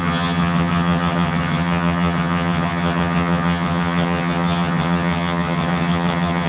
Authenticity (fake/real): fake